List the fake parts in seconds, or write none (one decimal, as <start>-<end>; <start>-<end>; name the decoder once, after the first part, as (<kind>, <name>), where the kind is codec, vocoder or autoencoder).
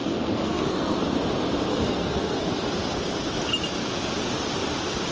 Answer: 0.0-1.0 (codec, SNAC); 1.7-2.5